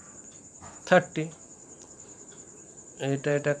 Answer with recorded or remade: remade